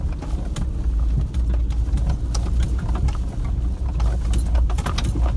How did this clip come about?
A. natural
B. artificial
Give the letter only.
A